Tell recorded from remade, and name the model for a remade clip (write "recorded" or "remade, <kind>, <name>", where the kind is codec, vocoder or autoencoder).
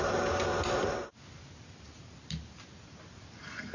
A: recorded